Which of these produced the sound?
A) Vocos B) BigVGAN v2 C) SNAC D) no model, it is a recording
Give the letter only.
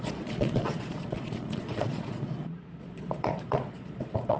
A